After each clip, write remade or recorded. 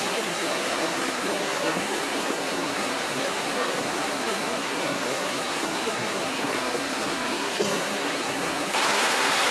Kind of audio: remade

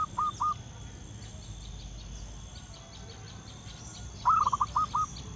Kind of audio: recorded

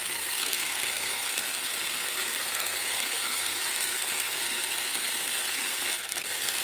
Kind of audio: remade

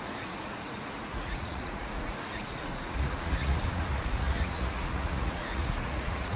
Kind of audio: remade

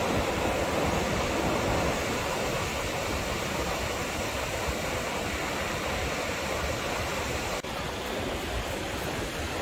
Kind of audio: recorded